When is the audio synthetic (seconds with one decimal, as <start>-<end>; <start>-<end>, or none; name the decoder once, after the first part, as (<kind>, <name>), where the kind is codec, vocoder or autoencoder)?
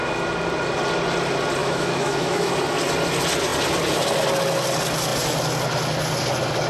1.6-2.5 (autoencoder, DAC-VAE)